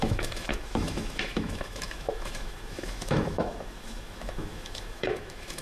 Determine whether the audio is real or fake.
fake